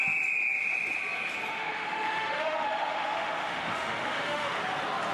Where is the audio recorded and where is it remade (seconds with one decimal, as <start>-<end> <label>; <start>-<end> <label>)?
0.0-1.5 recorded; 1.5-4.6 remade; 4.6-5.1 recorded